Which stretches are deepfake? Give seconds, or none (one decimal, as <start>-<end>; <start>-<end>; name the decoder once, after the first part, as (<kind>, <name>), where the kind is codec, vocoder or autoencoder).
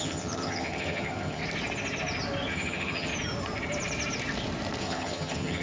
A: 0.0-1.4 (vocoder, HiFi-GAN); 2.5-3.1; 4.8-5.6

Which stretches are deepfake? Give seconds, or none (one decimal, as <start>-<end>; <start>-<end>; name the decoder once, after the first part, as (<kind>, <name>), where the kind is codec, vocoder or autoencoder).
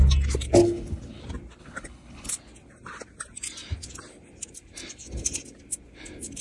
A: 0.6-1.2 (codec, HILCodec); 1.6-2.3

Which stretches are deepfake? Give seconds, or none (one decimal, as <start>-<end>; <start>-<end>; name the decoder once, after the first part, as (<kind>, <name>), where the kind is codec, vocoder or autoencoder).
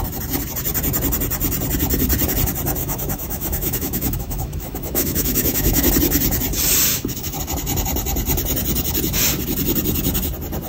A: 2.8-5.9 (autoencoder, DAC-VAE); 6.9-7.4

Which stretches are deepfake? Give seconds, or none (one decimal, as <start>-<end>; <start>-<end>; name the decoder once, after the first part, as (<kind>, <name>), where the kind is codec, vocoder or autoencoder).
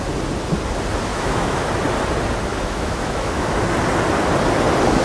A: 1.1-1.7 (autoencoder, DAC-VAE); 2.5-3.6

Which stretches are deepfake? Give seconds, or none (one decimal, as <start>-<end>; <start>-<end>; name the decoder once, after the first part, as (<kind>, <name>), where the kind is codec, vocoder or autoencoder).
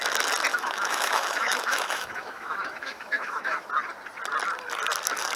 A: 0.5-3.7 (autoencoder, DAC-VAE)